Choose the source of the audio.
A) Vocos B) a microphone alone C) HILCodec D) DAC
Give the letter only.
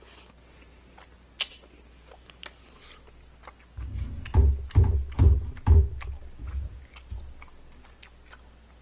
B